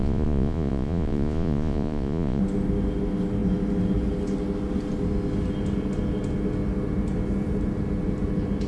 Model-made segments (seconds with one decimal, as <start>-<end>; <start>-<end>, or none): 0.0-2.4